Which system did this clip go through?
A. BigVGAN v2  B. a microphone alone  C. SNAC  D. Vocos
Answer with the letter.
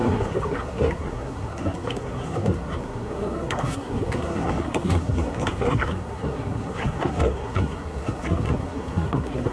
C